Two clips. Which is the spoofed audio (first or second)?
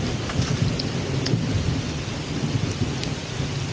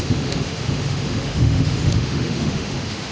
second